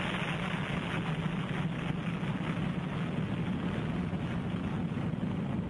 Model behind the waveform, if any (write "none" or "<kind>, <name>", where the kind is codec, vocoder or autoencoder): none